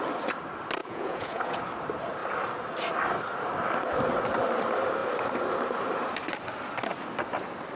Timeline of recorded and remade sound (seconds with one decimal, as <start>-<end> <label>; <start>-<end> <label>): 0.0-0.8 recorded; 0.8-1.6 remade; 1.6-7.8 recorded